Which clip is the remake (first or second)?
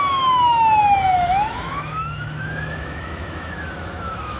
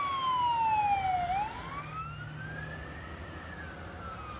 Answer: first